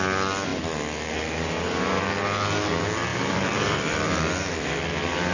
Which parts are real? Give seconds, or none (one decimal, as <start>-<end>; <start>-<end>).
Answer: 0.0-3.1; 4.8-5.3